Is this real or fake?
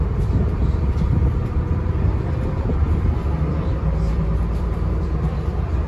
fake